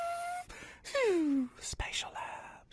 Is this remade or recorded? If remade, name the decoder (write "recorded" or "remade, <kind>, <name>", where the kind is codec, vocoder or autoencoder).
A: recorded